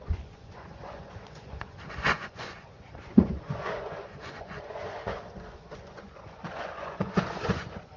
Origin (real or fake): fake